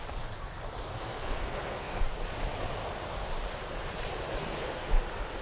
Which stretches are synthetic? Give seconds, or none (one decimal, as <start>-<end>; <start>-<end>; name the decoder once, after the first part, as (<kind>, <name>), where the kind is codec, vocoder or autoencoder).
0.9-2.0 (codec, SNAC); 4.4-5.0